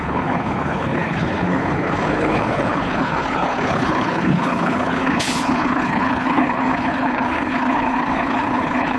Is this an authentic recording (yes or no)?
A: no